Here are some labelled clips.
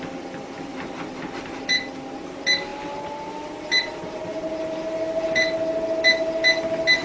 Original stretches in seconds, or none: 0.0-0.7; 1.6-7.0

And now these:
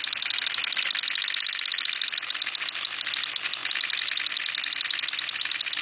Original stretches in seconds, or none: 0.0-5.8

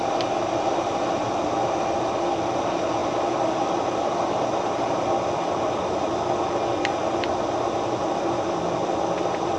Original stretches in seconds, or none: 0.0-3.0; 6.6-9.6

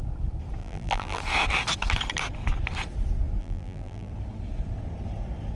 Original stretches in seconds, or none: 0.0-0.6; 1.2-3.4; 4.1-5.6

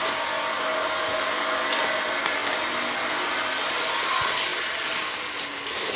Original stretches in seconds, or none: 0.7-1.8

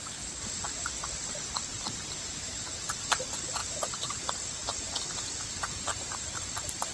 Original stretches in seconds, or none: 0.0-1.7; 2.6-3.6; 4.3-5.9; 6.4-6.9

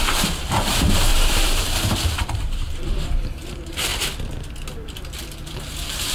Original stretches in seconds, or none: 3.9-5.5

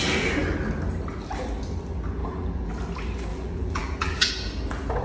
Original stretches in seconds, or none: 0.0-2.2; 2.7-3.3; 4.3-5.0